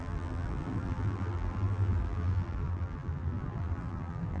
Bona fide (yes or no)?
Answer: no